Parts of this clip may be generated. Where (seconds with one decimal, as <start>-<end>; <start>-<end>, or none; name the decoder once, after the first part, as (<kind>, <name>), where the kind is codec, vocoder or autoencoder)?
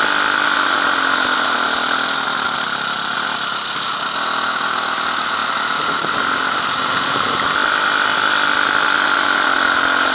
none